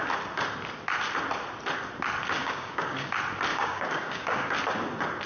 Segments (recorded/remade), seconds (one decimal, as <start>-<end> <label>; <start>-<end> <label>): 0.0-2.4 recorded; 2.4-3.1 remade; 3.1-3.5 recorded; 3.5-4.5 remade; 4.5-5.3 recorded